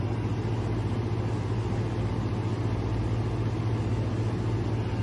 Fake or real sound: real